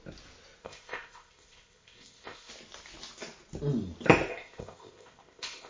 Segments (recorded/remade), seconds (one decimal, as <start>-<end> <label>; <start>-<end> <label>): 0.0-0.6 recorded; 0.6-2.5 remade; 2.5-4.3 recorded; 4.3-5.7 remade